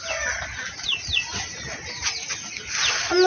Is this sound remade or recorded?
recorded